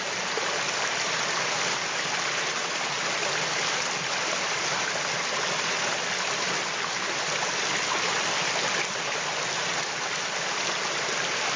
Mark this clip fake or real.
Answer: real